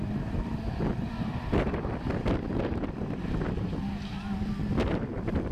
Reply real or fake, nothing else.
real